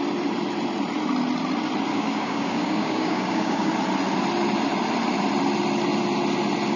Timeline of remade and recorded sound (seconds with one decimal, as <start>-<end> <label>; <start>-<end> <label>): 0.0-1.9 recorded; 1.9-3.7 remade; 3.7-6.8 recorded